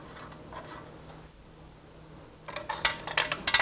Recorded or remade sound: recorded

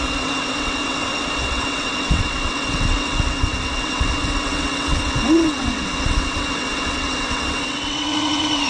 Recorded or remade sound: remade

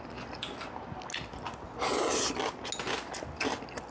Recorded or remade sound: recorded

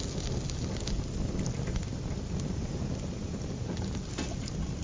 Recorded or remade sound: recorded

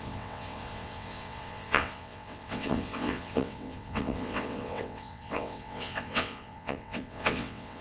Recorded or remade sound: remade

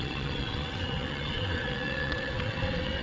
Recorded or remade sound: remade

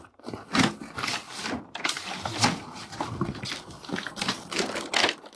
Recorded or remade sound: recorded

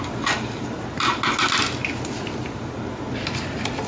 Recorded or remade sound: recorded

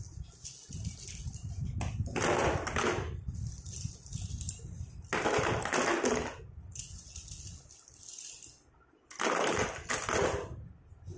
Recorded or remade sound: recorded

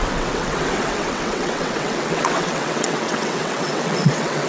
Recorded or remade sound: remade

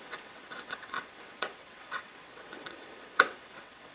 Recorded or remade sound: remade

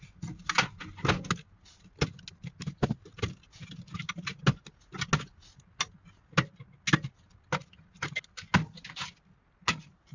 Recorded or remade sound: recorded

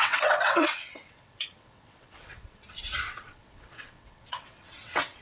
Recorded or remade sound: remade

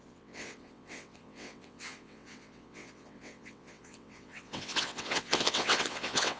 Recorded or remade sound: remade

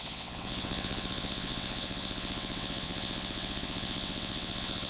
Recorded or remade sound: remade